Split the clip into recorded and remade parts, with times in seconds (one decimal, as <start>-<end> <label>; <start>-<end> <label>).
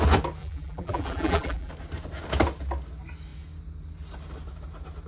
0.0-0.4 recorded; 0.4-1.7 remade; 1.7-5.1 recorded